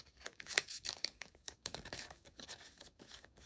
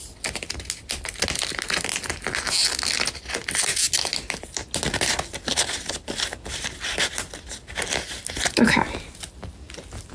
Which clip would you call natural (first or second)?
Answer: second